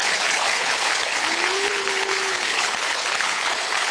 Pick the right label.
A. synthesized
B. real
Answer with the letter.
A